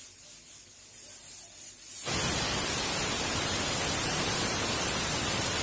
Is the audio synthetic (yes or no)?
no